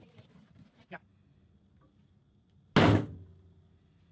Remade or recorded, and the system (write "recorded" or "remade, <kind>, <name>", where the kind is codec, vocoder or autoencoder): recorded